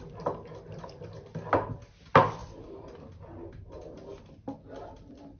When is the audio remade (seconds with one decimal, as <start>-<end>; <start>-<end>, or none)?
none